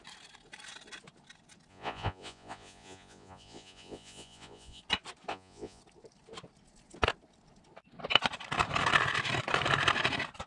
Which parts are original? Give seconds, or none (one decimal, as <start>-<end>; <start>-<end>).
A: 0.0-1.7; 4.8-5.3; 5.8-10.5